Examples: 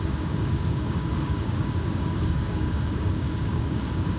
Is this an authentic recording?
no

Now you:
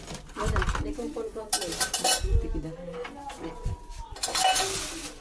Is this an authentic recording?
yes